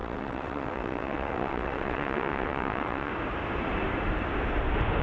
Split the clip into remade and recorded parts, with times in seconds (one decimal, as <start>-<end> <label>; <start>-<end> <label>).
0.0-3.1 remade; 3.1-5.0 recorded